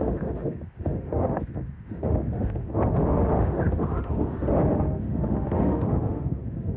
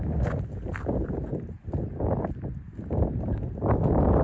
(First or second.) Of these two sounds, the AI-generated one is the first